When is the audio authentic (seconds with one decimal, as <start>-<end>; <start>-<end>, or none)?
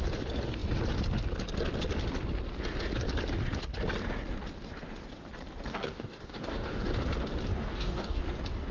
0.0-5.7; 6.9-7.5; 8.2-8.7